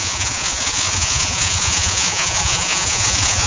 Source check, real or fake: fake